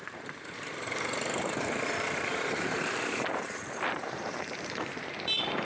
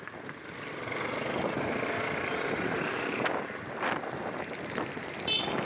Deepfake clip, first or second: first